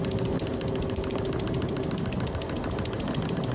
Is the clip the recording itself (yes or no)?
yes